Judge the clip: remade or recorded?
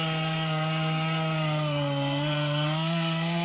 remade